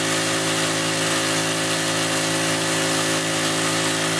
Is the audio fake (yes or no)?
no